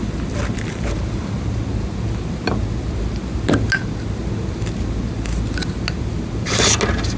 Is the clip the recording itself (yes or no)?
yes